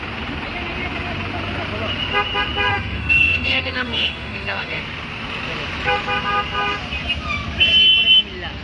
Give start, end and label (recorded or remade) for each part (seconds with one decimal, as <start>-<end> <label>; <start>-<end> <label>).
0.0-2.7 recorded; 2.7-4.8 remade; 4.8-8.6 recorded